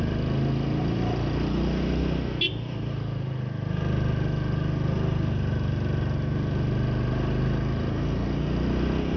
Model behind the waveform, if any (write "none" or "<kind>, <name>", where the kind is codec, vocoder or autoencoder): none